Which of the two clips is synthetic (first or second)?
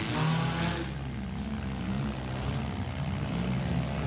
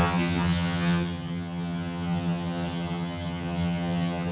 second